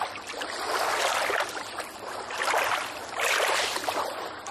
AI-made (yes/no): no